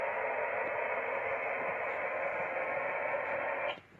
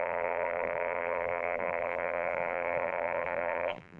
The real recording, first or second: first